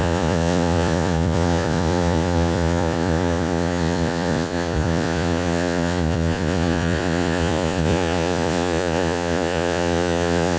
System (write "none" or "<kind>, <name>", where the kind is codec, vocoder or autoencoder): vocoder, Vocos